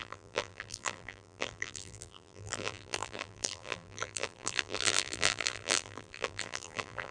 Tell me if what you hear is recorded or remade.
remade